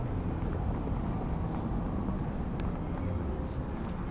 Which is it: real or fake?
real